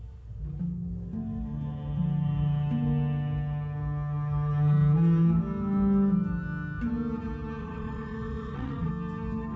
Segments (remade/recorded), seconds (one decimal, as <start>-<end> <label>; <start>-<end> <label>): 0.0-7.6 recorded; 7.6-8.9 remade; 8.9-9.6 recorded